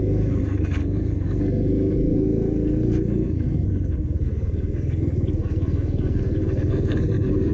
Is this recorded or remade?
remade